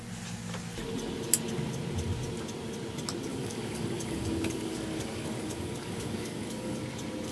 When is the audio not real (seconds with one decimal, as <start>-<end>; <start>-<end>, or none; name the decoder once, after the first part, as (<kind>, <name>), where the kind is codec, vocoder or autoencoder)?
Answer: 3.3-6.8 (codec, DAC)